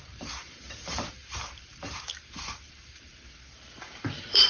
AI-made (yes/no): yes